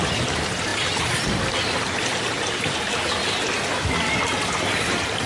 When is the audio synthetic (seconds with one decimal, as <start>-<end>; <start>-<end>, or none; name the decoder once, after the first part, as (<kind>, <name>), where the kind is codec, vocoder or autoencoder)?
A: none